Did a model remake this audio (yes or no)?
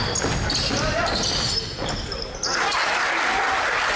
no